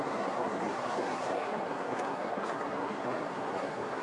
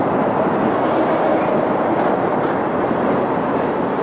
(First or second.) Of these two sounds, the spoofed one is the first